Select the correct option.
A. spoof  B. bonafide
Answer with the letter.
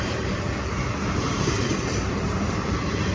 A